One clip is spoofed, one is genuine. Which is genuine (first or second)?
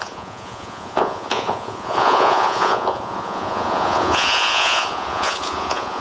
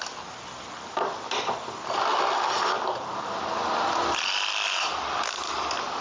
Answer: second